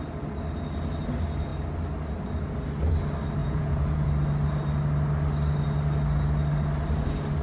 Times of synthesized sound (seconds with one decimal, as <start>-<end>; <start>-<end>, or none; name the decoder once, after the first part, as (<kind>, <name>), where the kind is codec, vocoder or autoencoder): 3.4-4.1 (vocoder, Vocos)